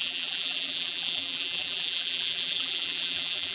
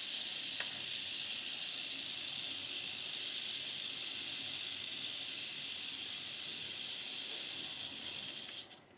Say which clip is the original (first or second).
second